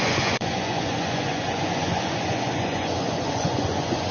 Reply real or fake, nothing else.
fake